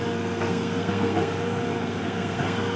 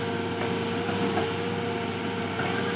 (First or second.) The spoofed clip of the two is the first